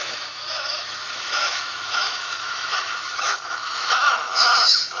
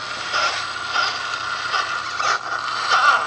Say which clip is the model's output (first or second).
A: first